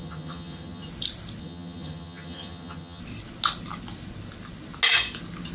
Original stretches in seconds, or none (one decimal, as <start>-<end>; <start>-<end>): 0.9-1.4; 3.0-5.5